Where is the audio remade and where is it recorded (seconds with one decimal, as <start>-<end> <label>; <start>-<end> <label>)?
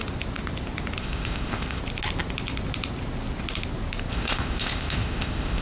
0.0-1.0 recorded; 1.0-1.8 remade; 1.8-4.1 recorded; 4.1-5.6 remade